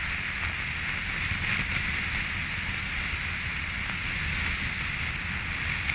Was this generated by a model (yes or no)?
no